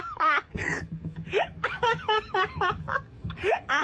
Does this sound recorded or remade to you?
remade